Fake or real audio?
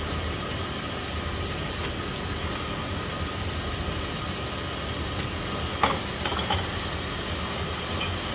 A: real